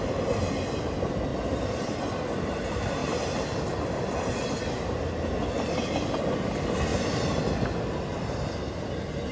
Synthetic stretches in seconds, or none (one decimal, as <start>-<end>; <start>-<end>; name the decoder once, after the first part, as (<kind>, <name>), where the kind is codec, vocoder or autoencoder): 1.3-2.0 (vocoder, BigVGAN v2); 3.0-3.6; 6.9-7.4